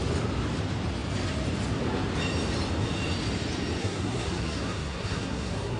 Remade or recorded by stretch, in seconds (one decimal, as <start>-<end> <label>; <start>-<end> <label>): 0.0-3.8 recorded; 3.8-5.8 remade